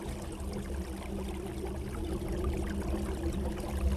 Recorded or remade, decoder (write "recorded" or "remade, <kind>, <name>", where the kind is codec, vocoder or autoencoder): recorded